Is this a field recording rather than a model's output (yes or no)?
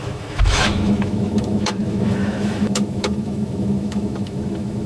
no